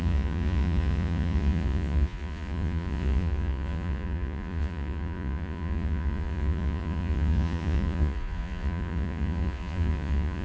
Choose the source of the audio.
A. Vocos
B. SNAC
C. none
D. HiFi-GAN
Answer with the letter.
A